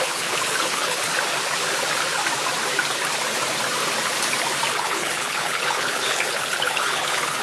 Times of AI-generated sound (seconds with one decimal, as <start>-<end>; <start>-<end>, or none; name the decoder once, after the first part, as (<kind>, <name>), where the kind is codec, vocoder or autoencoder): 0.0-1.1 (codec, HILCodec); 4.7-7.4